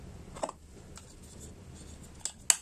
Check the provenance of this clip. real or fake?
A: real